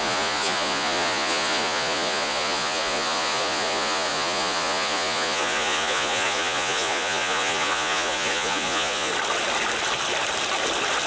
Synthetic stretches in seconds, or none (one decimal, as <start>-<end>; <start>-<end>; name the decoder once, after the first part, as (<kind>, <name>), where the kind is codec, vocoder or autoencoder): 0.0-9.1 (vocoder, Vocos)